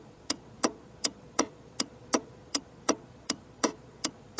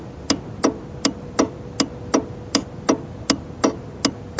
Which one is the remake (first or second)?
first